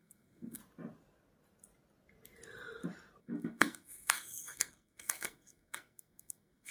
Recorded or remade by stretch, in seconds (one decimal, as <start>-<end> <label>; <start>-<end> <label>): 0.0-0.6 remade; 0.6-3.2 recorded; 3.2-6.7 remade